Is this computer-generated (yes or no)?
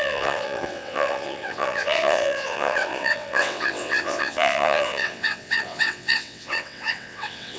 yes